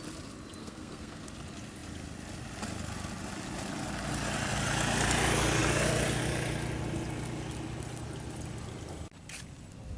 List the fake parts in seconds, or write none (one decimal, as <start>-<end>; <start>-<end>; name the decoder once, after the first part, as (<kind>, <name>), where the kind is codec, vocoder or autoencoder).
0.6-1.2 (codec, SNAC)